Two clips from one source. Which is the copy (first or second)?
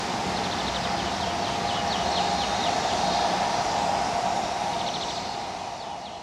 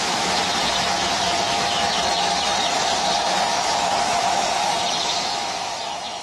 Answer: second